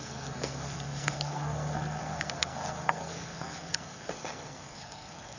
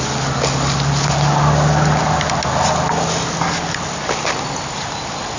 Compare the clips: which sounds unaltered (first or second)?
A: second